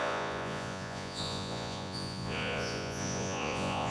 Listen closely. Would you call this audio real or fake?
fake